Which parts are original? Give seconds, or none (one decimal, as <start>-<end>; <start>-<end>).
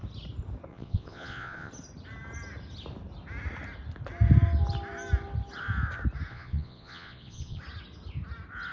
0.0-0.7; 1.7-6.3; 7.6-8.7